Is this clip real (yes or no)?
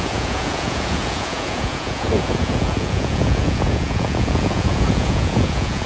no